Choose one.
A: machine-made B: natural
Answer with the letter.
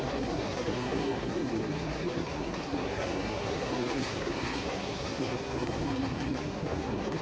A